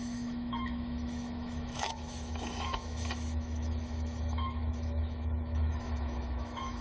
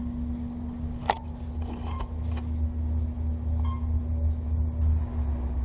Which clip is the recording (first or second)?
second